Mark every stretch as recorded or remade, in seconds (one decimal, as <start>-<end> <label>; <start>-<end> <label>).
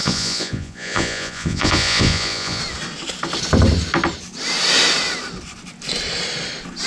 0.0-2.6 remade; 2.6-6.9 recorded